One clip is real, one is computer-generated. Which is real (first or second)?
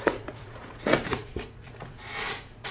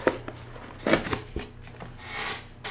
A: second